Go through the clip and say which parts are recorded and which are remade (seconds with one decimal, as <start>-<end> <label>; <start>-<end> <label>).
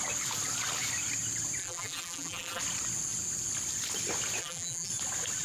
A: 0.0-1.6 recorded; 1.6-2.6 remade; 2.6-4.4 recorded; 4.4-4.9 remade; 4.9-5.4 recorded